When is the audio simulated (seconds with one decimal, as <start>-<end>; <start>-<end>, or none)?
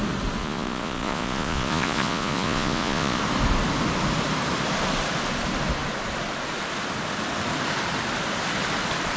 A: 0.4-3.2